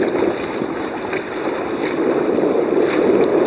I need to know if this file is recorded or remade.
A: recorded